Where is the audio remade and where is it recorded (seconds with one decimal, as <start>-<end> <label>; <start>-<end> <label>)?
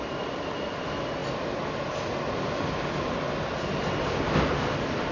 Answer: 0.0-1.2 remade; 1.2-4.3 recorded; 4.3-5.1 remade